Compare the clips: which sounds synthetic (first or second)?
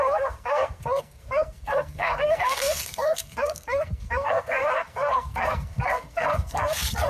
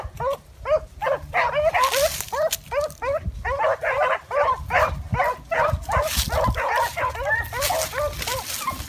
first